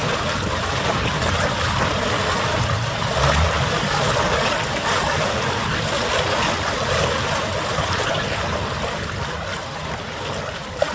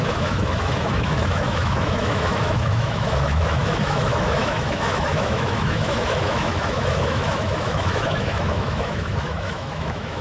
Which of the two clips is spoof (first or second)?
second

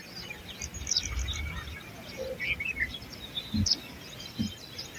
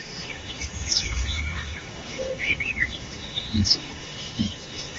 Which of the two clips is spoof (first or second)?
second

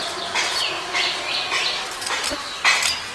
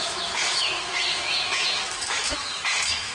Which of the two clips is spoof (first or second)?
second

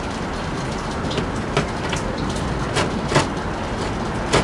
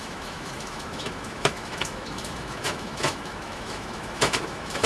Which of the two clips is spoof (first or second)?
second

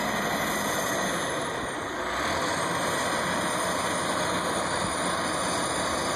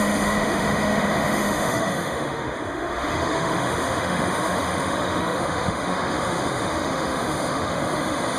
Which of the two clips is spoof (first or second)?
second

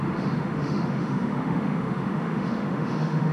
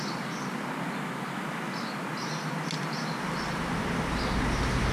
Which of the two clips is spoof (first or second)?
first